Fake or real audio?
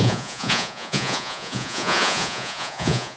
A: fake